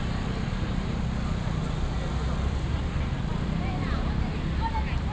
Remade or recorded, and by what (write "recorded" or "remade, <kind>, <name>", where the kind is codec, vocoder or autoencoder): recorded